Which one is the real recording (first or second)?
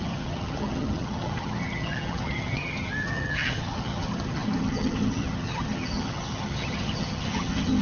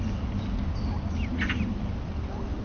second